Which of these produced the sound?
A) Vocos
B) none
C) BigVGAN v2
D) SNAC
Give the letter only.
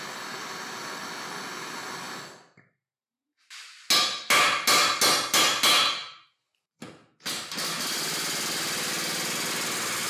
B